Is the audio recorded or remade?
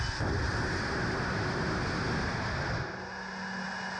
recorded